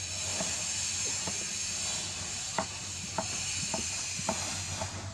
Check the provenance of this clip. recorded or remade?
recorded